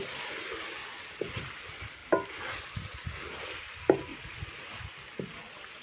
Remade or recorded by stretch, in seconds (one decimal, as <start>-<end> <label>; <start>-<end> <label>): 0.0-0.8 recorded; 0.8-1.3 remade; 1.3-4.1 recorded; 4.1-4.8 remade; 4.8-5.8 recorded